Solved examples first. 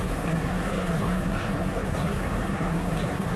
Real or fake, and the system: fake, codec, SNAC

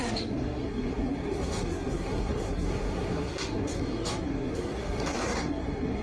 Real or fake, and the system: fake, codec, SNAC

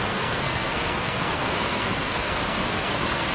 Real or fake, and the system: fake, codec, SNAC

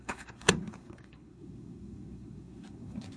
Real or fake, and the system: fake, codec, SNAC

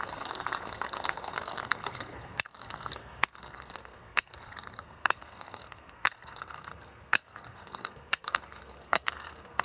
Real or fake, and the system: fake, codec, SNAC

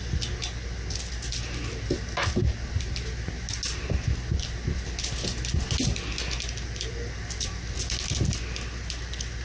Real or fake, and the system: real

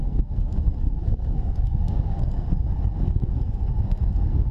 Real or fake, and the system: fake, codec, SNAC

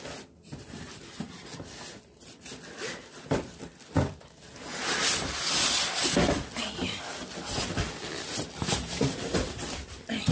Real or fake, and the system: real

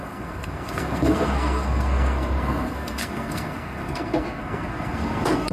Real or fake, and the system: fake, codec, SNAC